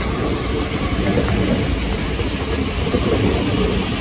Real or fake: real